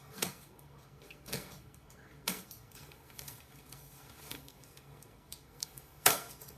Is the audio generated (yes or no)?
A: yes